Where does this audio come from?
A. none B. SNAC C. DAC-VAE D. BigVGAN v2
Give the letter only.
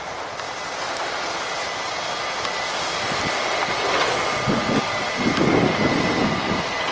A